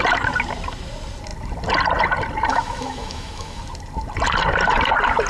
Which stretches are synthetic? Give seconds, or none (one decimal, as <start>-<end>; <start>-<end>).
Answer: 2.5-3.6